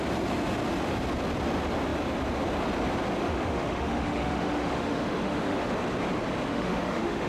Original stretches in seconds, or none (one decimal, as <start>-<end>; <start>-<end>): 0.0-3.2; 5.7-6.5

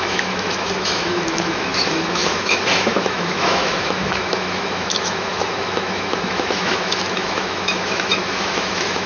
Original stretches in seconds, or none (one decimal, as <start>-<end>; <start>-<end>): none